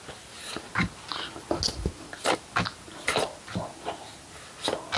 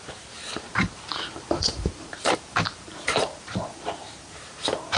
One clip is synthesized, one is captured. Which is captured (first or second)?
first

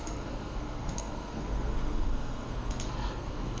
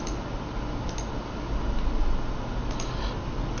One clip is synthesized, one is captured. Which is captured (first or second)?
second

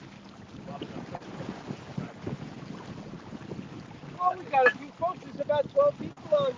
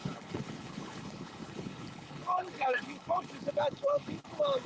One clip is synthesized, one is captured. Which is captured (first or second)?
first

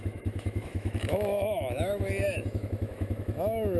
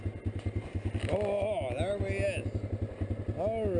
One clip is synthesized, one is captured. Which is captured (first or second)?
second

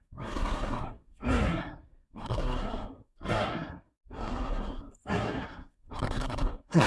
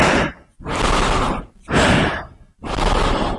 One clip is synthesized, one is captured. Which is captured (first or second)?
second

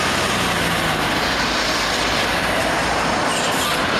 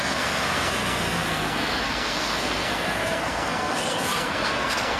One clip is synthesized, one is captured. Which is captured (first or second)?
first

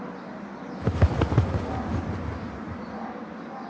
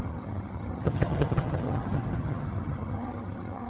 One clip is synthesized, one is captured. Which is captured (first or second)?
first